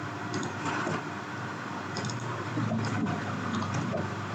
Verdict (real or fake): real